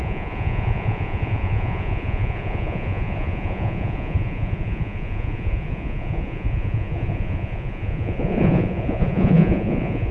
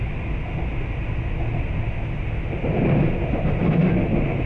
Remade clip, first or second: first